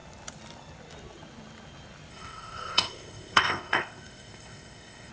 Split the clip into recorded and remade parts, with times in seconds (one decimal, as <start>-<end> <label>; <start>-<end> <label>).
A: 0.0-2.1 recorded; 2.1-5.1 remade